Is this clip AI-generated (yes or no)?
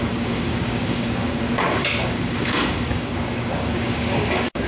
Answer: yes